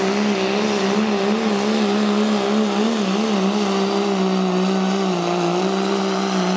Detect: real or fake real